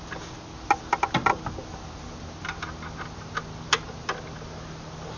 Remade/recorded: recorded